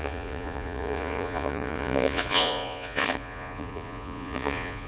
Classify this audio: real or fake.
fake